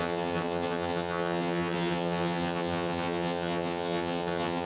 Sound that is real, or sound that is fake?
fake